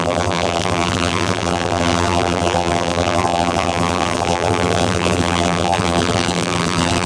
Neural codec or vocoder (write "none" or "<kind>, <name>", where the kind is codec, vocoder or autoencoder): vocoder, BigVGAN v2